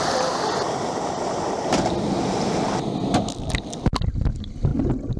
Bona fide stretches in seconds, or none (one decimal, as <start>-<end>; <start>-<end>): 0.0-5.2